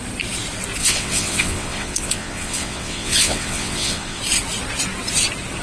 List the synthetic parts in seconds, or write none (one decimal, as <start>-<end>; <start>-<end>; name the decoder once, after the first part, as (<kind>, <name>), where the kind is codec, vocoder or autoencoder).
0.8-4.2 (vocoder, WaveNeXt)

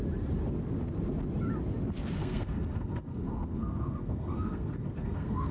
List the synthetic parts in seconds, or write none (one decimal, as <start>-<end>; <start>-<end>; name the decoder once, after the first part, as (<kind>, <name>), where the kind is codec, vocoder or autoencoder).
2.2-5.5 (codec, SNAC)

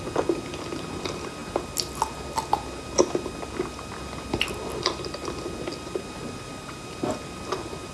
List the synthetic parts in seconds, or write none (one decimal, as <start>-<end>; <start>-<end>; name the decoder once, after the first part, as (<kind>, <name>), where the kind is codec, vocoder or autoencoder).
none

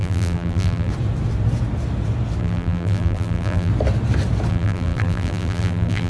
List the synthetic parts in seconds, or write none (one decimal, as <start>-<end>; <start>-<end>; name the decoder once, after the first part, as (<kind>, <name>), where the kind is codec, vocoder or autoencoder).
0.0-0.9 (vocoder, BigVGAN v2); 2.4-3.7; 4.5-6.1

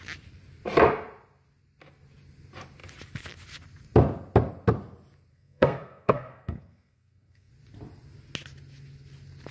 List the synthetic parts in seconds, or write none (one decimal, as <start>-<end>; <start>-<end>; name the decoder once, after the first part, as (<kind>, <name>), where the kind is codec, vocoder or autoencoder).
5.3-7.5 (codec, SNAC)